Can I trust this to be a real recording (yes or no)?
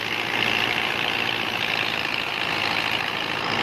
yes